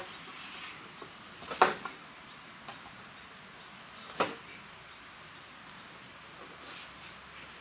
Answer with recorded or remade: recorded